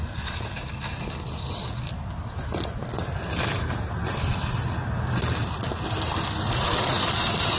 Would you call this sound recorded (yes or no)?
yes